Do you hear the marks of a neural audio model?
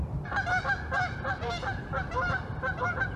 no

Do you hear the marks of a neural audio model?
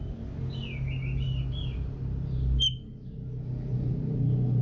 no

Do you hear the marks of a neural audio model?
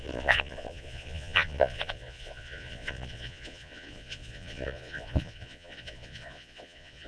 yes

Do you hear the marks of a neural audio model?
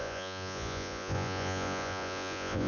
yes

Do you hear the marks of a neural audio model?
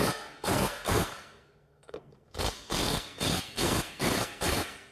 yes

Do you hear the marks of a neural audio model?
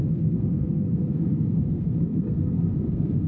yes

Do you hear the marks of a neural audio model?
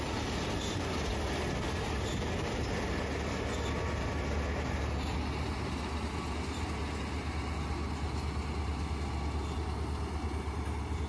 no